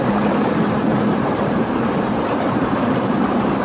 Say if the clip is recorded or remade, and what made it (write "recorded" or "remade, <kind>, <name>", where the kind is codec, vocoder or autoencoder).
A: remade, vocoder, BigVGAN v2